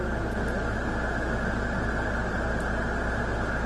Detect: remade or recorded recorded